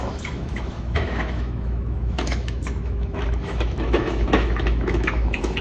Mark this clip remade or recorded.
remade